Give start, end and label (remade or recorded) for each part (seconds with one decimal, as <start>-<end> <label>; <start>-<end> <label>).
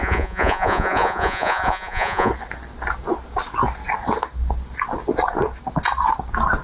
0.0-2.3 remade; 2.3-6.6 recorded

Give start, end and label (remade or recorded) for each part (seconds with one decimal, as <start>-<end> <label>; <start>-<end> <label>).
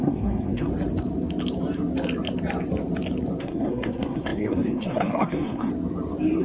0.0-0.7 remade; 0.7-3.4 recorded; 3.4-5.7 remade; 5.7-6.4 recorded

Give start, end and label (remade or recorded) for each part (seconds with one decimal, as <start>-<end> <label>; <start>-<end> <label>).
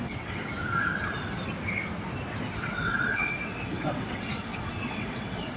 0.0-0.4 remade; 0.4-2.5 recorded; 2.5-5.6 remade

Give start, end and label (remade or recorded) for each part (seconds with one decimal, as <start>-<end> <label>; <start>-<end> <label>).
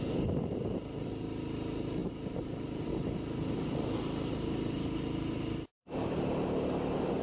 0.0-7.2 recorded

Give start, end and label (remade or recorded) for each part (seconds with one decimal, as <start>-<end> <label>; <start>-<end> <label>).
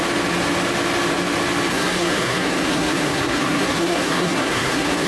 0.0-1.7 recorded; 1.7-5.1 remade